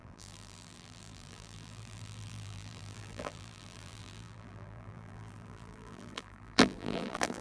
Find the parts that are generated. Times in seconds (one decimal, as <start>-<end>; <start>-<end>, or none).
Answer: 0.0-7.4

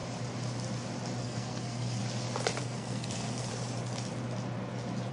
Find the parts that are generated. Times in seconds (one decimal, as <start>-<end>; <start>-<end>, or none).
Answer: 1.2-2.0; 2.6-3.5

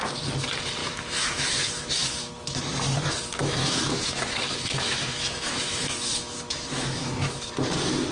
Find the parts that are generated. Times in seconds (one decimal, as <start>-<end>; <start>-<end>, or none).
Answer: 0.8-2.6; 3.4-7.5

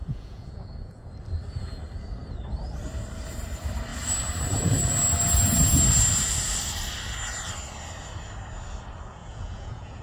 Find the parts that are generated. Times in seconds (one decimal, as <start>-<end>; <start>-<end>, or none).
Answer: 0.0-1.1; 9.2-10.0

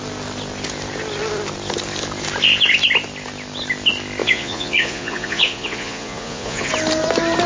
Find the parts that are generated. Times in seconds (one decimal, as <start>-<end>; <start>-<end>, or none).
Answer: 4.2-6.7

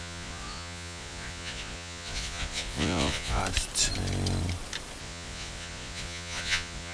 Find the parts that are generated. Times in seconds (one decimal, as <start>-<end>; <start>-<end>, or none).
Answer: 0.0-3.4; 5.0-6.9